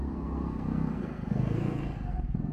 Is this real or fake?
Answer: fake